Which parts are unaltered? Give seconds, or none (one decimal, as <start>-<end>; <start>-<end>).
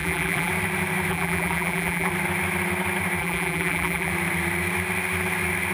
0.5-1.1; 2.1-3.2; 4.1-5.7